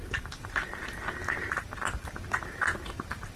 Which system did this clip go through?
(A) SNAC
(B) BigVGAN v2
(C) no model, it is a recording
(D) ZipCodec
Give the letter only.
C